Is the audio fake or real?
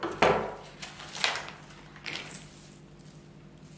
real